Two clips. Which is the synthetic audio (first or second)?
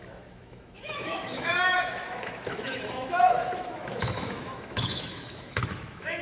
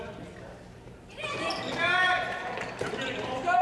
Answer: first